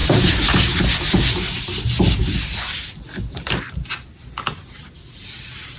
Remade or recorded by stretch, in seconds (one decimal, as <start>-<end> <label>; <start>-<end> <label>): 0.0-0.8 remade; 0.8-5.8 recorded